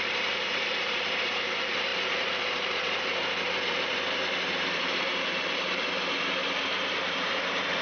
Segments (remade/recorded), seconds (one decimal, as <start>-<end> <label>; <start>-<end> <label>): 0.0-5.1 remade; 5.1-6.9 recorded; 6.9-7.8 remade